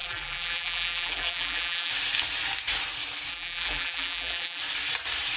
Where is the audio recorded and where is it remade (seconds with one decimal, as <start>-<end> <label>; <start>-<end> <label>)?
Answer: 0.0-1.9 remade; 1.9-3.3 recorded; 3.3-4.6 remade; 4.6-5.4 recorded